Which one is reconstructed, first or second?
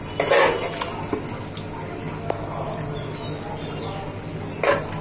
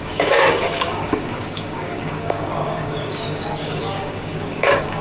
second